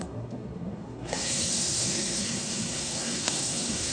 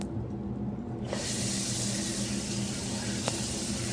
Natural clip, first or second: second